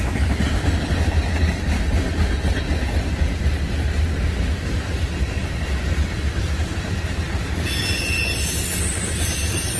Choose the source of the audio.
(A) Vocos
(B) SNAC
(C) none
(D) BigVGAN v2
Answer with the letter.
C